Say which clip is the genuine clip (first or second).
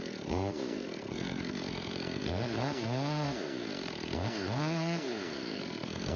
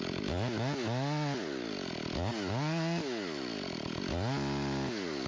second